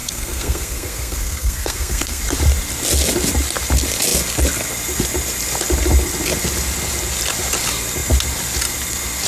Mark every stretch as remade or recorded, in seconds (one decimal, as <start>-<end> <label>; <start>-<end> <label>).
0.0-2.2 remade; 2.2-9.3 recorded